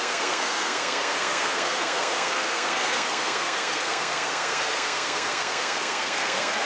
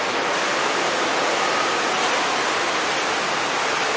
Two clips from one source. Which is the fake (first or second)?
first